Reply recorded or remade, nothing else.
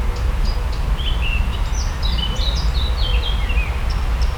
recorded